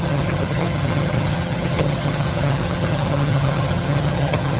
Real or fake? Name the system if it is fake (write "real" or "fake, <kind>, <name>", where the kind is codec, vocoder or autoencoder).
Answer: fake, vocoder, HiFi-GAN